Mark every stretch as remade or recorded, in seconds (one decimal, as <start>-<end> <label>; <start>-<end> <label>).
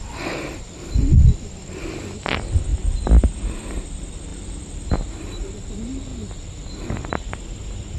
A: 0.0-2.7 recorded; 2.7-3.2 remade; 3.2-4.3 recorded; 4.3-4.9 remade; 4.9-8.0 recorded